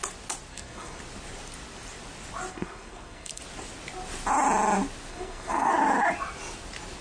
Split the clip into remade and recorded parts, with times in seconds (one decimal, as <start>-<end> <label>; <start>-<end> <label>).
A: 0.0-0.5 recorded; 0.5-1.0 remade; 1.0-2.5 recorded; 2.5-3.4 remade; 3.4-5.1 recorded; 5.1-5.7 remade; 5.7-7.0 recorded